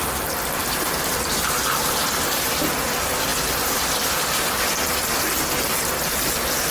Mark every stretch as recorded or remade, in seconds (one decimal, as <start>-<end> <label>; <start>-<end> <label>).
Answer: 0.0-0.6 recorded; 0.6-2.5 remade; 2.5-6.7 recorded